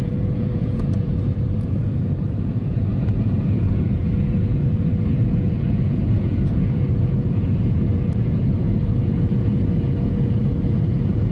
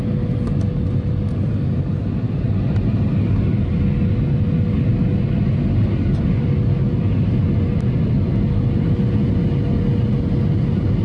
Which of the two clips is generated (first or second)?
first